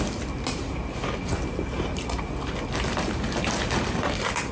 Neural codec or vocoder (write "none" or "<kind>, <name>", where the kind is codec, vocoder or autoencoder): none